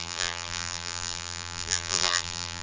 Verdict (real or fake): fake